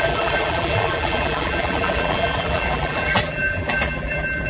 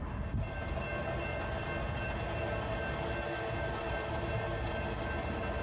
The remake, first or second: first